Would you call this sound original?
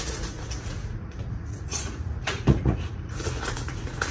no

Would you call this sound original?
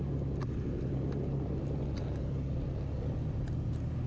yes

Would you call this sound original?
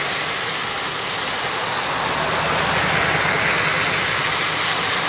yes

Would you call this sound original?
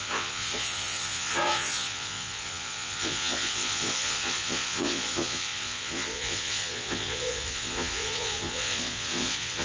no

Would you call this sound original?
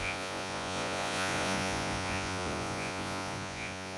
no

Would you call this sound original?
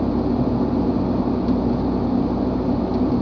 yes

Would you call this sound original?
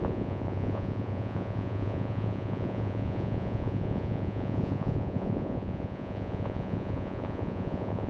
no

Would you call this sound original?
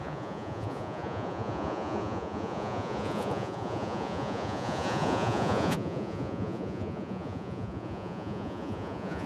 no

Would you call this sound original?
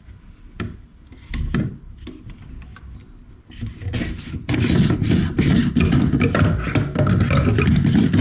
yes